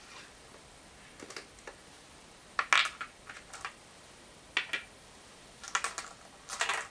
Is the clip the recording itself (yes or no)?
yes